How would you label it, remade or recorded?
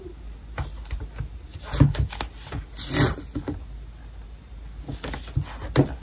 recorded